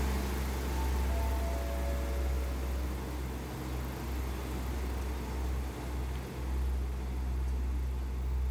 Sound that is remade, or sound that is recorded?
recorded